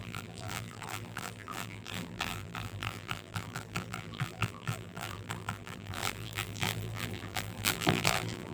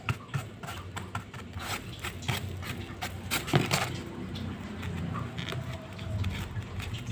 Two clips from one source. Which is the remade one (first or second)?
first